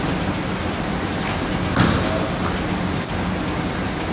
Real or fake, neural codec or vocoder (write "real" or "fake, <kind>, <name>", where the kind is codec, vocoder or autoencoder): real